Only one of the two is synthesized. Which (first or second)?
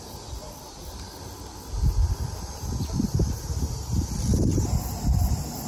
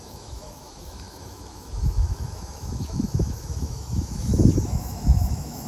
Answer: second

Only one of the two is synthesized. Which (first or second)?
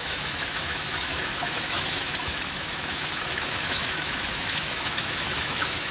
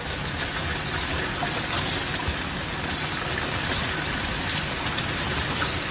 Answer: first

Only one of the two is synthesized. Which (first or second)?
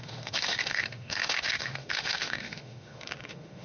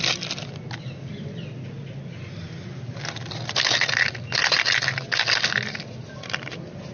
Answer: first